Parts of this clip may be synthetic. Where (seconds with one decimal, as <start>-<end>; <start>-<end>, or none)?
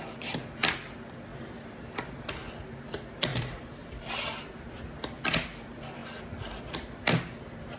3.3-4.5